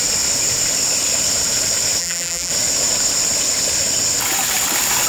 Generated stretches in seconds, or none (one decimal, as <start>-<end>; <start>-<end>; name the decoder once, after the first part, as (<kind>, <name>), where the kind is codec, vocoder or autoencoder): 2.0-2.5 (vocoder, BigVGAN v2)